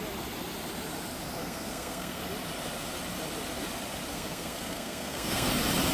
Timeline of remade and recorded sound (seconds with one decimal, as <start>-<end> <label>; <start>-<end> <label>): 0.0-1.4 recorded; 1.4-2.2 remade; 2.2-4.1 recorded; 4.1-5.5 remade; 5.5-5.9 recorded